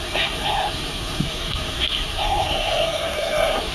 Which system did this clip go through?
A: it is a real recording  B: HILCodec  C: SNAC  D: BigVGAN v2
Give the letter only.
C